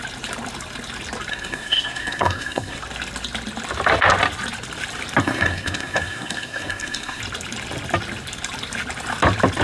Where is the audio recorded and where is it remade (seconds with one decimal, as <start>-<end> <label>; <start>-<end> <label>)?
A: 0.0-1.3 recorded; 1.3-2.8 remade; 2.8-5.2 recorded; 5.2-7.2 remade; 7.2-9.6 recorded